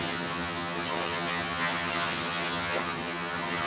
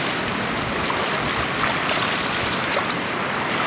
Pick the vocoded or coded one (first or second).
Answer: first